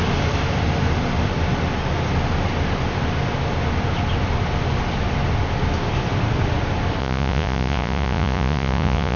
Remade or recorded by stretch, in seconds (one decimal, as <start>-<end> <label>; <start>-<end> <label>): 0.0-7.0 recorded; 7.0-9.2 remade